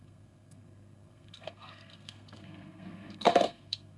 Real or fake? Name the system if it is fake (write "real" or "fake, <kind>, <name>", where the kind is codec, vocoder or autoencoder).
fake, codec, SNAC